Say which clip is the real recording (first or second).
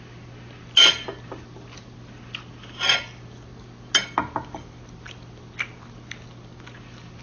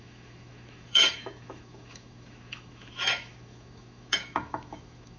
first